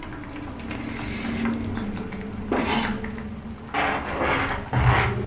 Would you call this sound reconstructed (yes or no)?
no